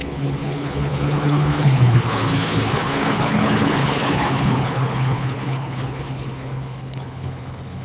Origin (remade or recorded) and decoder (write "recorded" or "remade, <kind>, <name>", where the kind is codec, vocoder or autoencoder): remade, codec, HILCodec